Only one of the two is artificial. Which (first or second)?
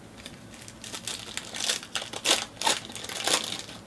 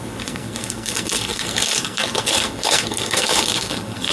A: second